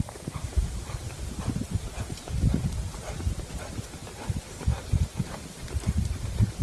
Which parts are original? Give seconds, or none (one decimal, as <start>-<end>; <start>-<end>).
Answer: none